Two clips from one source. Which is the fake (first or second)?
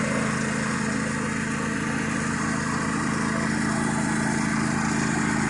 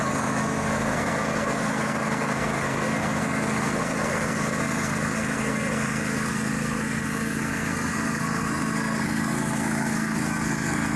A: second